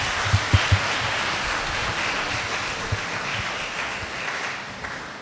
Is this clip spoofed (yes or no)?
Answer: no